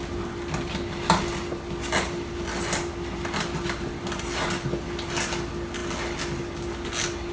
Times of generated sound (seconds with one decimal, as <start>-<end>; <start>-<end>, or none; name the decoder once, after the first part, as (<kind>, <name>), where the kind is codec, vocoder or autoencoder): none